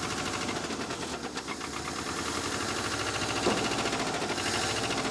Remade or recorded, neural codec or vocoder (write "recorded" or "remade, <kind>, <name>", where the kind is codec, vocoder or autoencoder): recorded